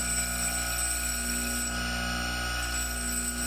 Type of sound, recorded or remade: recorded